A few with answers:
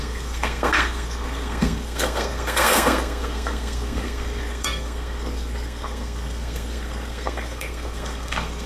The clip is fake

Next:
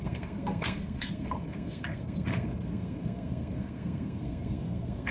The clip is fake